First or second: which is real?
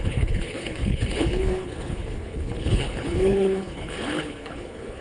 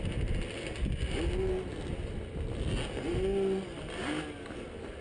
second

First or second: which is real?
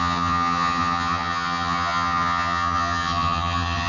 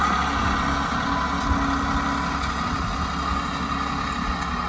second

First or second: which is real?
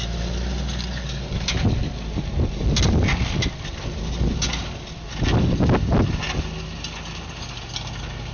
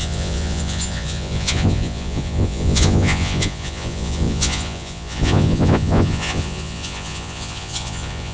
first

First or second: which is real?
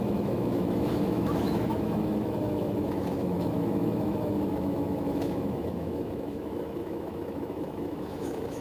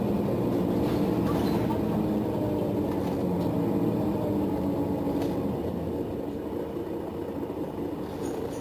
second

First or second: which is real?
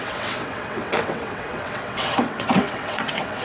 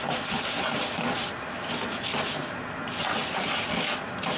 second